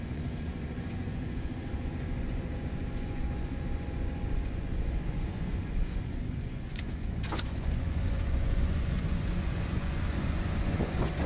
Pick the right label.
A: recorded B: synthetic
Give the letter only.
B